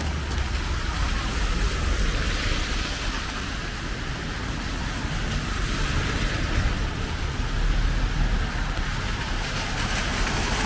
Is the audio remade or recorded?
recorded